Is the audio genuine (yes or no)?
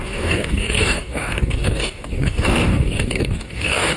no